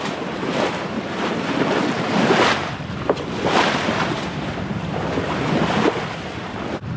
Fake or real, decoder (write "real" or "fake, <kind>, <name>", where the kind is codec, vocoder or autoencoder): fake, vocoder, BigVGAN v2